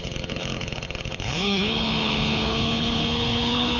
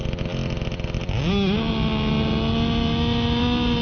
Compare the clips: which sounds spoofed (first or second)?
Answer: first